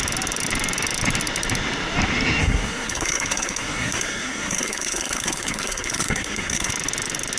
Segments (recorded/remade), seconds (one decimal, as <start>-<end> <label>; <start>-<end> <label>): 0.0-2.4 recorded; 2.4-6.7 remade; 6.7-7.4 recorded